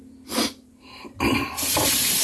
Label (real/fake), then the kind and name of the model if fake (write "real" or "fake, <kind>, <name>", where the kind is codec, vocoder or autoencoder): fake, vocoder, BigVGAN v2